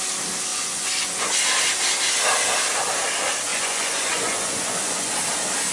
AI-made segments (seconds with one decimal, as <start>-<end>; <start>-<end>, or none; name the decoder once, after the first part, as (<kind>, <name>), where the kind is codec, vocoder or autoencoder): 0.5-1.3 (vocoder, Vocos); 3.5-5.1